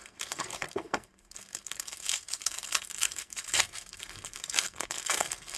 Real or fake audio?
fake